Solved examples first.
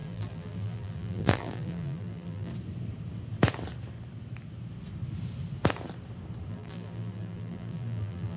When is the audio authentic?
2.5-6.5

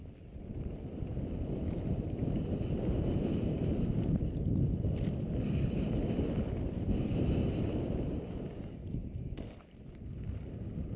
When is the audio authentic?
2.2-7.0; 9.0-11.0

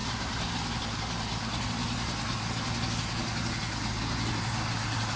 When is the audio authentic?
0.5-5.2

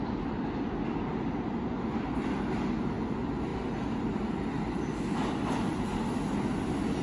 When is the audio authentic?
0.0-7.0

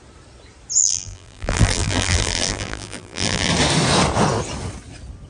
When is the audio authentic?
0.0-0.8; 3.5-5.3

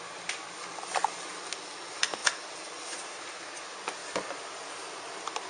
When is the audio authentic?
0.0-5.5

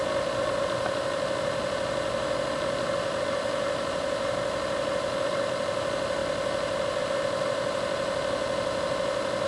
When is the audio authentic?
0.0-9.5